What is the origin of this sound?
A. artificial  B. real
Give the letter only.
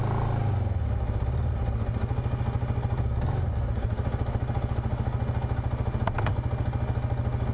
B